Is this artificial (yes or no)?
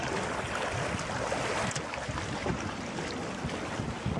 no